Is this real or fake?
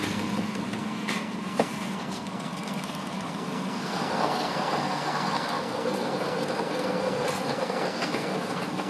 fake